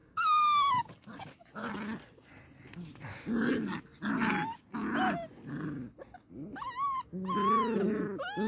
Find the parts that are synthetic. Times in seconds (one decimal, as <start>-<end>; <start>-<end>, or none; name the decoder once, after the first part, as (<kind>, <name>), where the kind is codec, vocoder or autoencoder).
0.0-1.7 (codec, DAC)